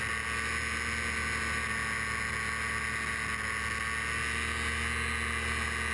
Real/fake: real